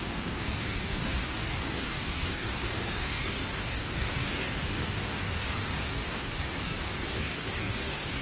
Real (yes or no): no